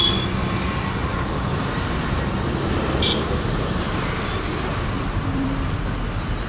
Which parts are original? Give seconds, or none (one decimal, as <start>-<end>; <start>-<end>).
0.0-1.0; 4.1-4.7; 5.8-6.5